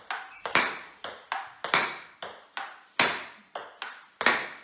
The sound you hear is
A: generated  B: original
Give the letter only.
B